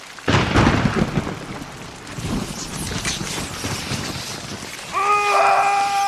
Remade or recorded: recorded